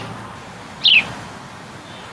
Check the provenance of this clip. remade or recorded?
recorded